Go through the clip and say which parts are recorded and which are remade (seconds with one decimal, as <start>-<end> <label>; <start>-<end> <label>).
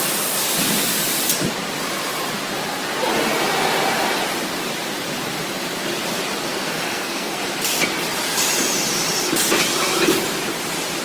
0.0-6.5 recorded; 6.5-7.4 remade; 7.4-11.0 recorded